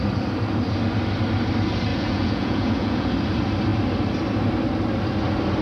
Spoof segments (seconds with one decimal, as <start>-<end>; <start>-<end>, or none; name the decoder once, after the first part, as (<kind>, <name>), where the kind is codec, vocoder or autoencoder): 1.9-3.1 (vocoder, Vocos)